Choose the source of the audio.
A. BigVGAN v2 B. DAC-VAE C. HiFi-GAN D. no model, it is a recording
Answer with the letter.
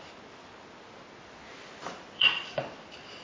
D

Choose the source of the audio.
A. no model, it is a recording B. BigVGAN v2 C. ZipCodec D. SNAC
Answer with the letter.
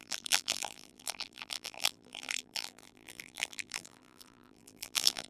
B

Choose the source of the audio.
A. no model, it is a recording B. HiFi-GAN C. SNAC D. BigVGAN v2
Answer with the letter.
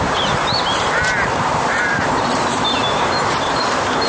D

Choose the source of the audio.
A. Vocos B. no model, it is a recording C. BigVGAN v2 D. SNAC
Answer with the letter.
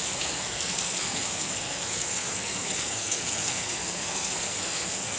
D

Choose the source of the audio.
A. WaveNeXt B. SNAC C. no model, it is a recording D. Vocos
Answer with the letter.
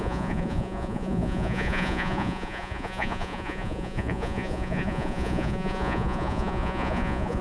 D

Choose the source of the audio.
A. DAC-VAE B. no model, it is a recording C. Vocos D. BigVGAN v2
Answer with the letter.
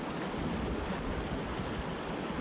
B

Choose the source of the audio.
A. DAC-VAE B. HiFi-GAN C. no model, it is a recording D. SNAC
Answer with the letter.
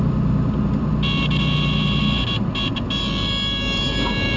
C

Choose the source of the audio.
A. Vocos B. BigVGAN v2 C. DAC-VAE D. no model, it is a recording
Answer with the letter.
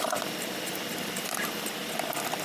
D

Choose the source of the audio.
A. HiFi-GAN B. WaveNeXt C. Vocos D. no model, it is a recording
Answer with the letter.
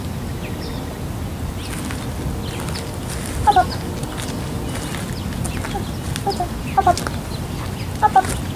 D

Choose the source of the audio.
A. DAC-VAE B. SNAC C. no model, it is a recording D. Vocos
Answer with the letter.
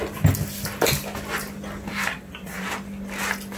C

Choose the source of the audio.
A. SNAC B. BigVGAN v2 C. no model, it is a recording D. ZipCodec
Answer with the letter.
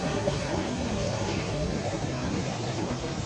A